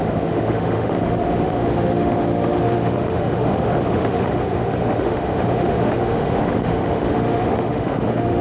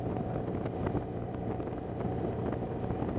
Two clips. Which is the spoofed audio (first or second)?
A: first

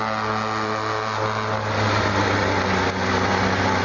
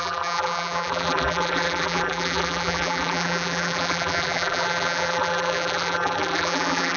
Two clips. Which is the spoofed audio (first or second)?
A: second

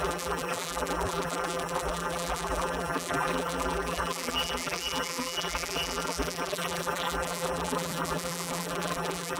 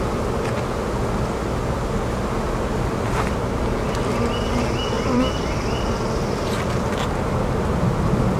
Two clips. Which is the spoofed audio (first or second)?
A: first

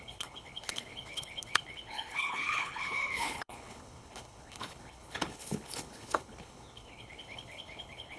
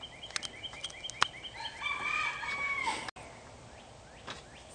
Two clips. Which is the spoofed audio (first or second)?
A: first